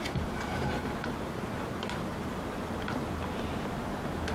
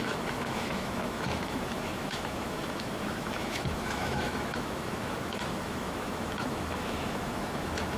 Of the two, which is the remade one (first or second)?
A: second